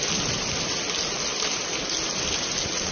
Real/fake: real